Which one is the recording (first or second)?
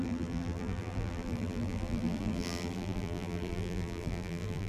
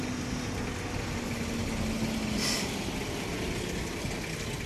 second